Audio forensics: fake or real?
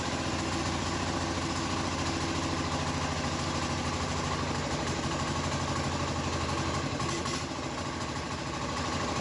real